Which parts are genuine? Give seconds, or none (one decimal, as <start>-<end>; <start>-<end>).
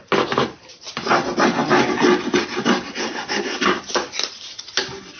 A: 0.0-3.0; 3.8-5.2